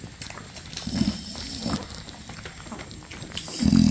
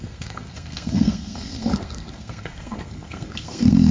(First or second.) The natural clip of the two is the first